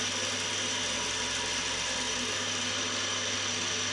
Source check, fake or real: real